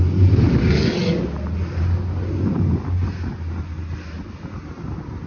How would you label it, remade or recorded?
recorded